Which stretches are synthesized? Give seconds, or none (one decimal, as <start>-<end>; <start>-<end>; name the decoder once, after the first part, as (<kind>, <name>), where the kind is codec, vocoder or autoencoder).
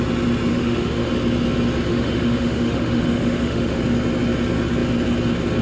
0.5-1.1 (autoencoder, DAC-VAE); 1.9-3.8